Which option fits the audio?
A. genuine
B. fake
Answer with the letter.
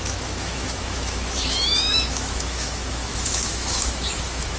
B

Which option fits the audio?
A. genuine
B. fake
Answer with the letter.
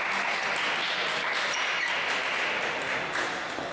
A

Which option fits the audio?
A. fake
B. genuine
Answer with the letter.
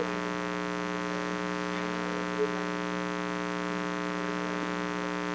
B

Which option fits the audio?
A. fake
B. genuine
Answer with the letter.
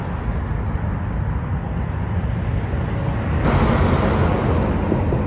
B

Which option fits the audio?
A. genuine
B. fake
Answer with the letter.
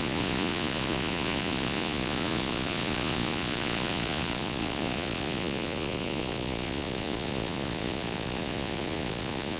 B